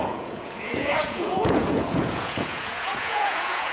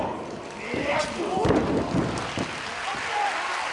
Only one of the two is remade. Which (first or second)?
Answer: first